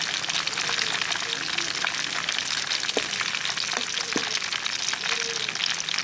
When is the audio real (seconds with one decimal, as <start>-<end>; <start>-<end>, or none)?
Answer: 0.0-6.0